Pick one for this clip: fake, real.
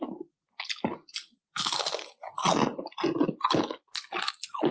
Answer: real